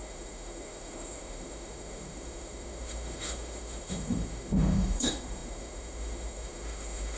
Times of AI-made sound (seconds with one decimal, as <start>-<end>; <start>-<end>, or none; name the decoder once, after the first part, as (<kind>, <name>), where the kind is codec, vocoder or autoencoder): 0.0-7.2 (autoencoder, DAC-VAE)